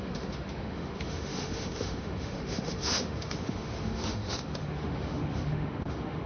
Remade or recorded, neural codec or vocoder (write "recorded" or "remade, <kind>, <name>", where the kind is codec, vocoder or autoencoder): remade, autoencoder, DAC-VAE